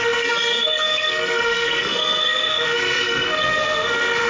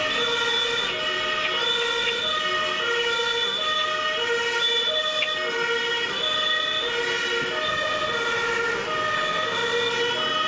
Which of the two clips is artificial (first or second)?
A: first